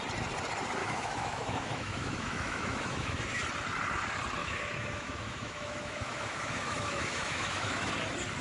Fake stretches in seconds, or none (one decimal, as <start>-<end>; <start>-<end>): 0.8-3.4; 4.4-7.9